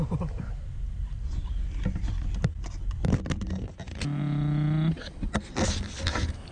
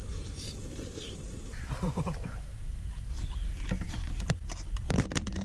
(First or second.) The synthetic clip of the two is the second